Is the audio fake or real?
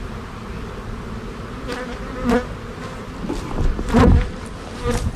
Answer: real